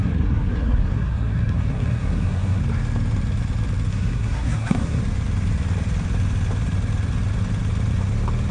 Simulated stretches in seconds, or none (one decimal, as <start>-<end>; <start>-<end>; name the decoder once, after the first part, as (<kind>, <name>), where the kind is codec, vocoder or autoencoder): 0.0-2.6 (codec, SNAC); 3.9-5.0